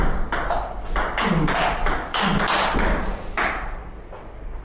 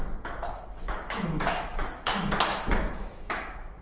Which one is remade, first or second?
second